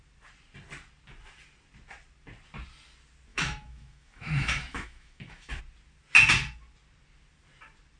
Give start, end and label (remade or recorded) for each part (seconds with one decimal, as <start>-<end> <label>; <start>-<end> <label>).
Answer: 0.0-3.3 recorded; 3.3-5.6 remade; 5.6-8.0 recorded